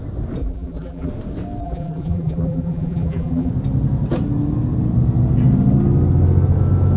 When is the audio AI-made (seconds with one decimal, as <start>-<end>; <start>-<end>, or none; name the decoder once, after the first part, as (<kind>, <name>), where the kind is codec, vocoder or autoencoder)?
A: 0.4-1.1 (vocoder, BigVGAN v2); 1.6-3.5